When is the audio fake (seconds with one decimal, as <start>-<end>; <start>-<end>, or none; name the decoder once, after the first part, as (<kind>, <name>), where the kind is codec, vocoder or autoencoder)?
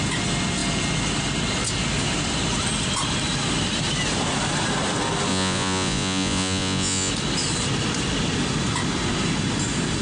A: 5.3-7.1 (vocoder, Vocos)